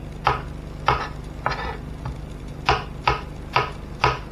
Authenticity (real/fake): real